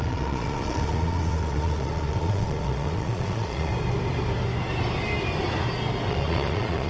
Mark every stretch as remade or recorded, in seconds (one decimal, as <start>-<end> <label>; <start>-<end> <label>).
0.0-3.7 remade; 3.7-6.1 recorded; 6.1-6.9 remade